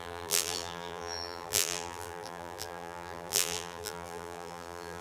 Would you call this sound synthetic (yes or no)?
yes